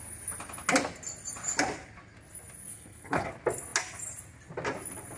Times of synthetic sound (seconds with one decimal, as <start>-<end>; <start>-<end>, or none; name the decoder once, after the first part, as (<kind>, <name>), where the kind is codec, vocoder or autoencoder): 2.7-3.3 (codec, HILCodec)